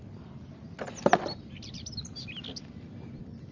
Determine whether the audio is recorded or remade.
recorded